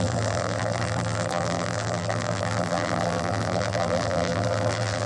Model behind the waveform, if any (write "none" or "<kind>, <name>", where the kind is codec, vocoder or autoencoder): vocoder, BigVGAN v2